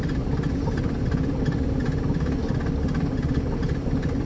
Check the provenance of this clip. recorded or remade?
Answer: recorded